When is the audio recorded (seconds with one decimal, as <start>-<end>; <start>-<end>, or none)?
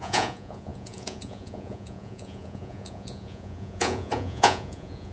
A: none